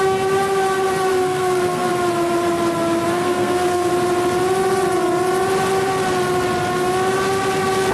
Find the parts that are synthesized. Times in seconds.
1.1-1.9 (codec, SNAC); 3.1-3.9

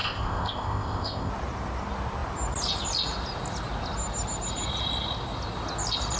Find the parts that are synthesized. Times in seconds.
0.0-1.3 (codec, ZipCodec)